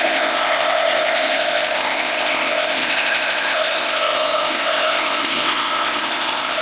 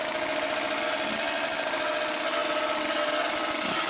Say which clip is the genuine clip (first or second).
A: second